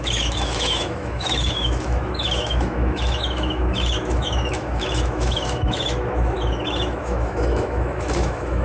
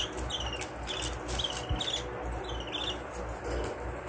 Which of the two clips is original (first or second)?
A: second